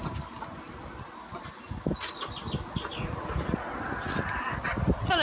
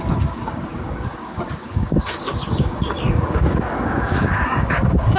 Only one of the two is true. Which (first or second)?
first